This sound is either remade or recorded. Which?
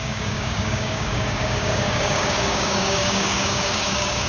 remade